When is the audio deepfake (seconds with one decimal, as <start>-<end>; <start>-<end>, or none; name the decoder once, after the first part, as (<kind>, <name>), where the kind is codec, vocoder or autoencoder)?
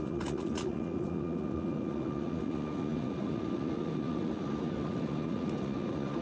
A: 0.0-6.2 (vocoder, Vocos)